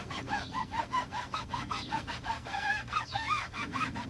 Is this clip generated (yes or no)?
yes